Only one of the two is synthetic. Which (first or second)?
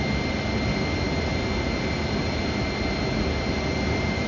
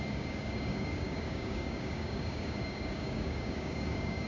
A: second